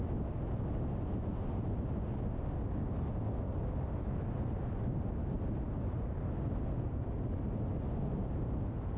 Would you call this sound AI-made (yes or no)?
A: no